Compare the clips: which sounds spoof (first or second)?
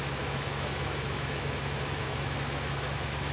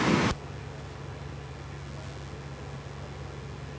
first